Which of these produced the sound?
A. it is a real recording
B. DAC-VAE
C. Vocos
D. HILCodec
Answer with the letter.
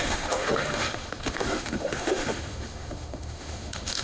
B